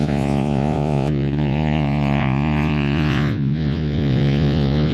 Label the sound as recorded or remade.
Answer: remade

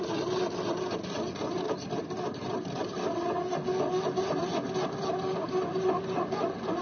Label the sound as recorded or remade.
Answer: recorded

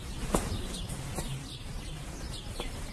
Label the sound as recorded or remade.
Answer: recorded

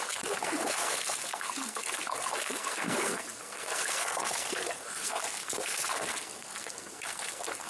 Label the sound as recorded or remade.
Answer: remade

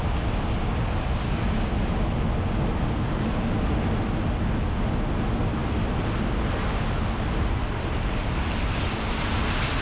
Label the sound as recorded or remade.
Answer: recorded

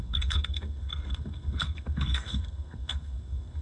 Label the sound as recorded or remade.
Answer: remade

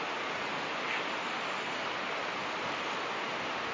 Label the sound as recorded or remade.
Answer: recorded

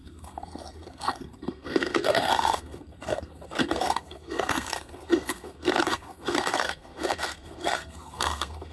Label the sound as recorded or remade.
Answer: remade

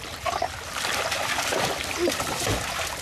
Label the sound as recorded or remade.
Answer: recorded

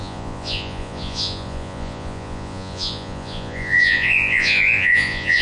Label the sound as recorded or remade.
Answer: remade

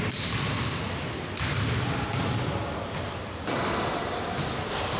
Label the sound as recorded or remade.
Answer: recorded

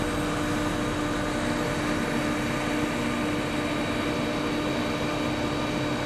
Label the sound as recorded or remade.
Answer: recorded